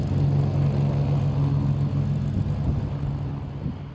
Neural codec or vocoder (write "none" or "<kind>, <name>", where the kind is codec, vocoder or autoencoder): none